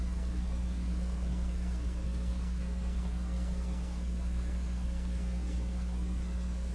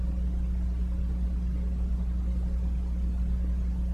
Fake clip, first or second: first